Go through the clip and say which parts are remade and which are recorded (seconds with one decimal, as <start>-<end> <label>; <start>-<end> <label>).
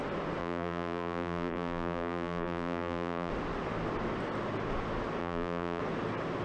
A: 0.0-0.4 recorded; 0.4-3.3 remade; 3.3-5.2 recorded; 5.2-5.8 remade; 5.8-6.4 recorded